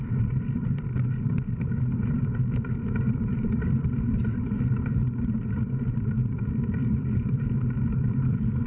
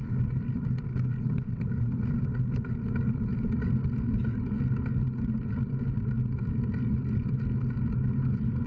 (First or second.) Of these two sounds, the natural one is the second